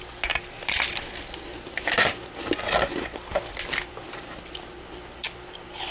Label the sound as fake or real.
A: real